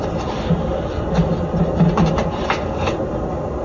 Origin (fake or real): real